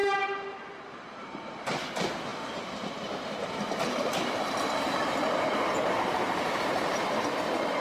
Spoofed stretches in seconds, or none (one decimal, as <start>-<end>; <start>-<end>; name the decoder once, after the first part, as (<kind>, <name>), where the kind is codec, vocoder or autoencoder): 0.0-1.8 (vocoder, BigVGAN v2); 2.3-7.0